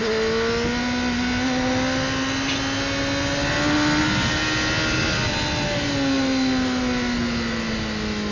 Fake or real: real